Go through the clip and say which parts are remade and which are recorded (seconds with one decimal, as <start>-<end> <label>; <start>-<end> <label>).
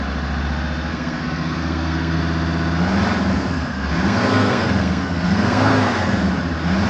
0.0-0.9 recorded; 0.9-2.2 remade; 2.2-3.3 recorded; 3.3-6.3 remade; 6.3-6.9 recorded